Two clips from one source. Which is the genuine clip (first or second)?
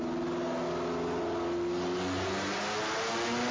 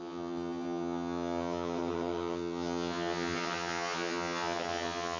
first